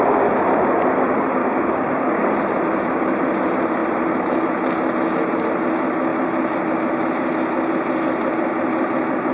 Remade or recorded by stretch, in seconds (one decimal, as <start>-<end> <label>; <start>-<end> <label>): 0.0-1.4 recorded; 1.4-2.3 remade; 2.3-9.3 recorded